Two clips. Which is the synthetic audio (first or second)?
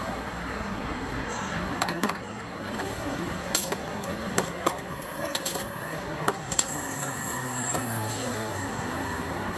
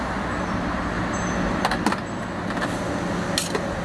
first